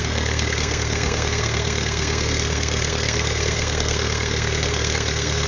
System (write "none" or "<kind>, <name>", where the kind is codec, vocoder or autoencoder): codec, SNAC